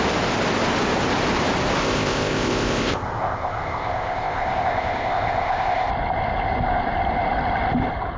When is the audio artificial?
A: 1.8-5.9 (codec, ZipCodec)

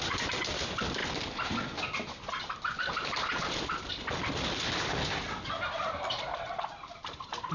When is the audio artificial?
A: none

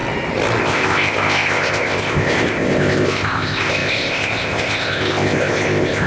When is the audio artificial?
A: 0.6-6.1 (codec, ZipCodec)